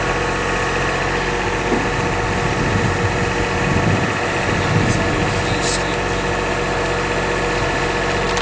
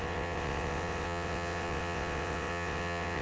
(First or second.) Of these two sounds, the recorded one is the first